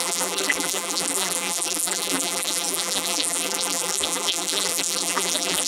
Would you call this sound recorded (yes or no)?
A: no